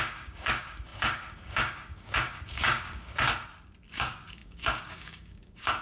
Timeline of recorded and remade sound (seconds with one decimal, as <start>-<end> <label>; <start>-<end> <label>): 0.0-3.3 remade; 3.3-3.9 recorded; 3.9-5.8 remade